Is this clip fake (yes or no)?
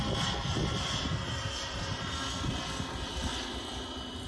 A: no